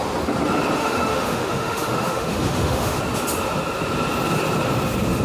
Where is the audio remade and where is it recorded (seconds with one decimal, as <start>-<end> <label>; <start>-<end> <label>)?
0.0-0.8 recorded; 0.8-3.0 remade; 3.0-5.2 recorded

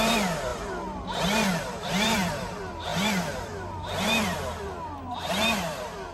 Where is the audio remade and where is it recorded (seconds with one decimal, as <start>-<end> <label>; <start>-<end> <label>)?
0.0-6.1 remade

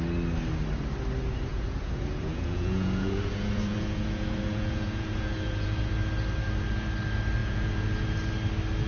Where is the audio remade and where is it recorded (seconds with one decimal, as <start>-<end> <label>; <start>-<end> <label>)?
0.0-1.5 recorded; 1.5-5.9 remade; 5.9-7.4 recorded; 7.4-8.0 remade; 8.0-8.9 recorded

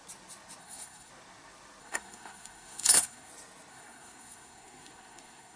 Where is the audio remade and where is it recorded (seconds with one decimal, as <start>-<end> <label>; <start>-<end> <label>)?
0.0-0.6 recorded; 0.6-1.1 remade; 1.1-1.8 recorded; 1.8-3.3 remade; 3.3-3.7 recorded; 3.7-5.6 remade

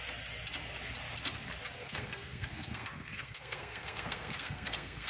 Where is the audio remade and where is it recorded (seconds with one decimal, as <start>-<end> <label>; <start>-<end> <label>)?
0.0-1.8 recorded; 1.8-5.1 remade

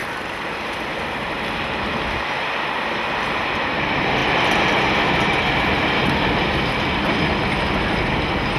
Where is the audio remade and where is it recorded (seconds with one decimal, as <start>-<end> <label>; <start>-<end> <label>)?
0.0-8.6 recorded

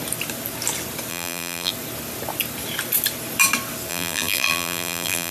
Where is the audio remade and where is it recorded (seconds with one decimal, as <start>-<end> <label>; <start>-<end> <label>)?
0.0-1.1 recorded; 1.1-1.7 remade; 1.7-3.9 recorded; 3.9-5.3 remade